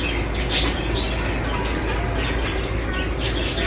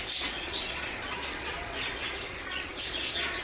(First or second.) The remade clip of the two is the second